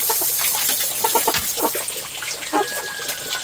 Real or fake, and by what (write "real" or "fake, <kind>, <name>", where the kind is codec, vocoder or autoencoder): real